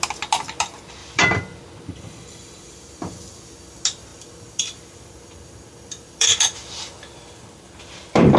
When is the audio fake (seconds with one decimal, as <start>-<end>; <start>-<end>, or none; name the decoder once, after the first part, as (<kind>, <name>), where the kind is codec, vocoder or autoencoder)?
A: 1.0-2.7 (vocoder, BigVGAN v2); 4.1-8.4